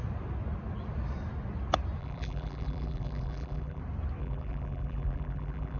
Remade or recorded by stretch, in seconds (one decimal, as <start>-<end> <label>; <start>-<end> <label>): 0.0-2.0 recorded; 2.0-3.8 remade; 3.8-4.2 recorded; 4.2-5.8 remade